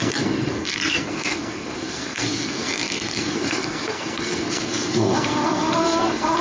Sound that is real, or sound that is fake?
fake